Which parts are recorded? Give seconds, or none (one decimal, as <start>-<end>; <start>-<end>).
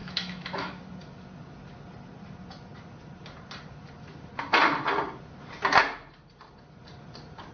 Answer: 0.8-7.5